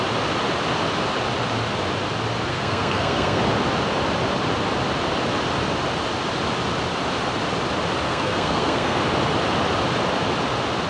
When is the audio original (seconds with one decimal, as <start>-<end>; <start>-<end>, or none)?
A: 0.0-2.5; 3.4-8.1; 9.0-10.9